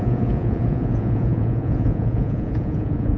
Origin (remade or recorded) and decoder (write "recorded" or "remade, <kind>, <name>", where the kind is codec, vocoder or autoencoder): remade, vocoder, Vocos